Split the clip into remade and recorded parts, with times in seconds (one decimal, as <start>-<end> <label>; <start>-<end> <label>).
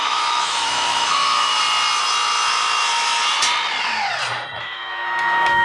0.0-1.5 remade; 1.5-4.6 recorded; 4.6-5.6 remade